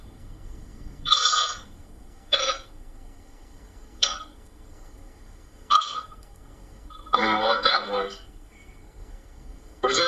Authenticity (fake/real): fake